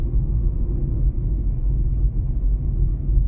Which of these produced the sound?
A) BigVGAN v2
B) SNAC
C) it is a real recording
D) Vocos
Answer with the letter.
C